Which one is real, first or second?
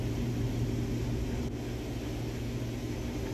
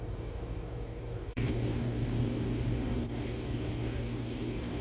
first